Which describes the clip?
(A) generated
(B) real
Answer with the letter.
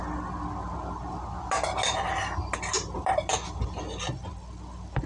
B